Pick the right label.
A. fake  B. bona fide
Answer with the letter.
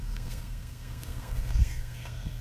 A